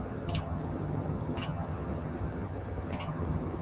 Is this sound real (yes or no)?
no